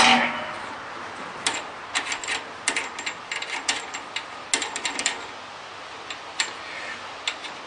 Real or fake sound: real